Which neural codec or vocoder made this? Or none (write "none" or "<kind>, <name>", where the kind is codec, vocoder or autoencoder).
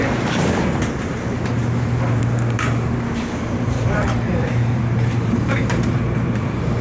vocoder, BigVGAN v2